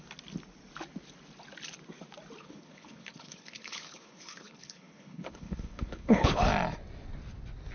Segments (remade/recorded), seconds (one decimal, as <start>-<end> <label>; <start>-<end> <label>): 0.0-2.4 recorded; 2.4-6.4 remade; 6.4-7.7 recorded